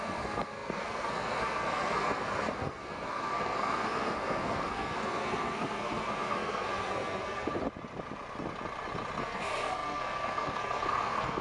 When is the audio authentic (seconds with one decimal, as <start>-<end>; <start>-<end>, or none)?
7.6-9.2